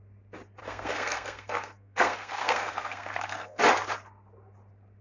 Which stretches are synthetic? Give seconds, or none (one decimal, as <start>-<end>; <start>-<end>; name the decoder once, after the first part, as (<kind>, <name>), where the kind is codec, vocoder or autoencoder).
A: 0.6-3.6 (codec, SNAC)

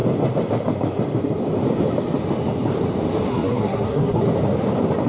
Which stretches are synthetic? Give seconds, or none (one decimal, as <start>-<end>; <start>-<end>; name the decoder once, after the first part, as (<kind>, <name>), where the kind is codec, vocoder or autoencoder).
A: 3.3-4.2 (codec, SNAC)

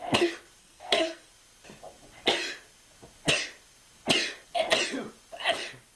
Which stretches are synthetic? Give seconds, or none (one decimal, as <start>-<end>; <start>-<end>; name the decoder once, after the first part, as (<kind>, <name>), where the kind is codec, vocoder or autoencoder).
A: 0.6-1.3 (codec, SNAC)

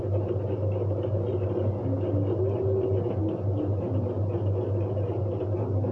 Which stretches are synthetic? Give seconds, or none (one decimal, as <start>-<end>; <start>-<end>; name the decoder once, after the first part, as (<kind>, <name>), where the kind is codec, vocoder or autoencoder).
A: none

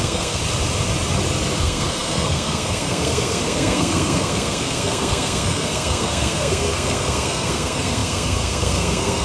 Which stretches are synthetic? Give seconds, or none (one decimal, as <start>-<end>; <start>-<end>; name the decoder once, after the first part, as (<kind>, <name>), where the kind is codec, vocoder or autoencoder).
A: 0.0-0.4 (codec, SNAC); 1.6-9.2